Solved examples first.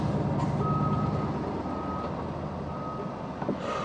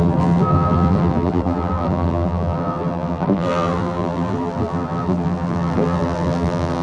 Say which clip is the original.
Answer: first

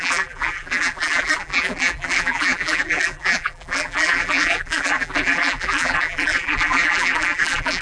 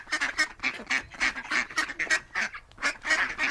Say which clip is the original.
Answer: second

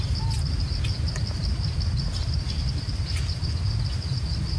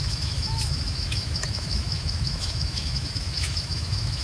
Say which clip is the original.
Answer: first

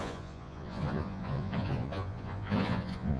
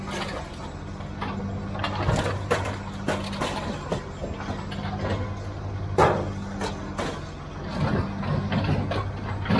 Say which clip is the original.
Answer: second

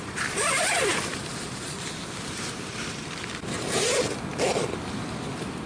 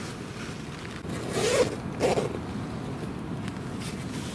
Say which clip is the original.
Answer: second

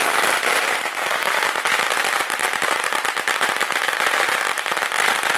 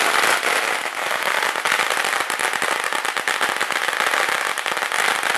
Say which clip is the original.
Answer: second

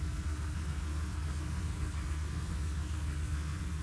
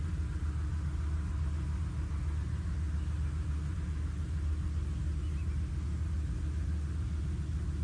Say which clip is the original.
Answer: second